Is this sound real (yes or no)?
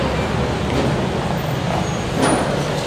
yes